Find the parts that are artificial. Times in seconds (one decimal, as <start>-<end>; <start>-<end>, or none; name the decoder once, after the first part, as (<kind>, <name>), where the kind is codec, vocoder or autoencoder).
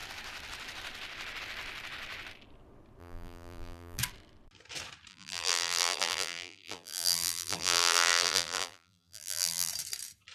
3.0-4.0 (vocoder, BigVGAN v2); 5.1-9.7